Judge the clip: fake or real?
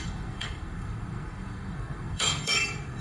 fake